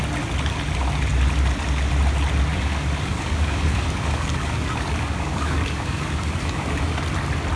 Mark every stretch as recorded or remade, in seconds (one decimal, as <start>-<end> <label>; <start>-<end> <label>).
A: 0.0-2.5 recorded; 2.5-7.0 remade; 7.0-7.6 recorded